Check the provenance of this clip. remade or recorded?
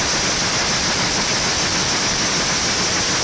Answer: recorded